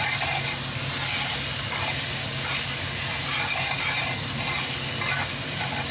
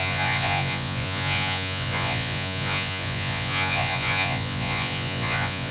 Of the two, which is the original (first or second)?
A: first